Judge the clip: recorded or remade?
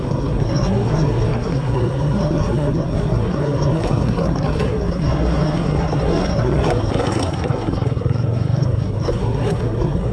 remade